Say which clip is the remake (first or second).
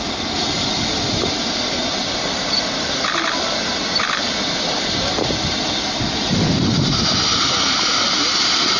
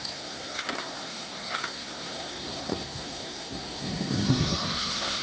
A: second